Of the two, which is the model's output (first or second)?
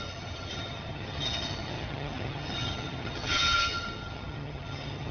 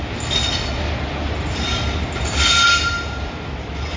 first